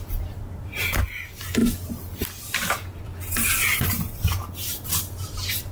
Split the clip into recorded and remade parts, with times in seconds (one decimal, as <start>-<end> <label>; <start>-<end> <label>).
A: 0.0-5.7 recorded